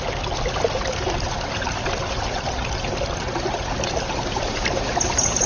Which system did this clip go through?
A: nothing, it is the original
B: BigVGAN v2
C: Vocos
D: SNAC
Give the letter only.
A